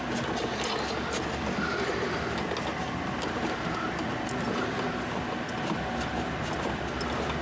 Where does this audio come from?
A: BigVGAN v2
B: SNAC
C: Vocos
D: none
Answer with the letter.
D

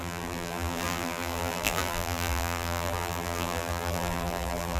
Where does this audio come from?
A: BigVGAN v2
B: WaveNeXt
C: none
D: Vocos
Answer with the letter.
A